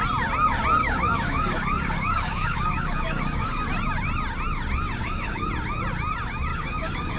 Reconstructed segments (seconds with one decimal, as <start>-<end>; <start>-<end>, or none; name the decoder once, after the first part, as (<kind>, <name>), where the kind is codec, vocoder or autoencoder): 0.8-3.7 (codec, DAC); 5.0-5.5; 6.5-7.2

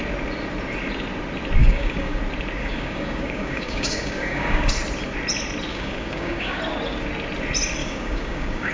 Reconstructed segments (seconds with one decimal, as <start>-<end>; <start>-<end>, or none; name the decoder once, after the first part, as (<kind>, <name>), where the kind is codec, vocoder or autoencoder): 1.6-2.2 (codec, DAC); 2.6-4.7; 5.7-6.6; 7.8-8.7